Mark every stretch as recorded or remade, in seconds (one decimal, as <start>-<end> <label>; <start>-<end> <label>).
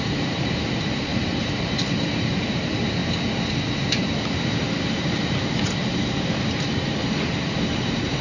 0.0-3.0 remade; 3.0-3.8 recorded; 3.8-8.2 remade